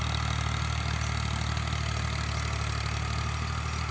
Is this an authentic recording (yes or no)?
yes